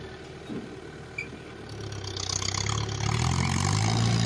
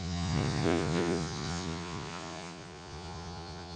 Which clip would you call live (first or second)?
first